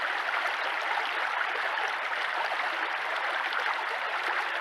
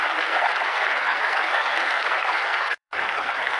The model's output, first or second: second